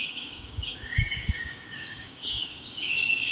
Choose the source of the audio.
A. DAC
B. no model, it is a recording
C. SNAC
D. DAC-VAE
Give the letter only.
A